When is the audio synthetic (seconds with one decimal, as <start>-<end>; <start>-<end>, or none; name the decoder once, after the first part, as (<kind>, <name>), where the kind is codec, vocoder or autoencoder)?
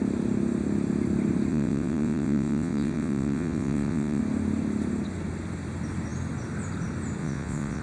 1.5-4.2 (vocoder, WaveNeXt); 7.2-7.8